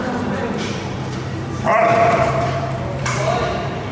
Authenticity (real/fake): fake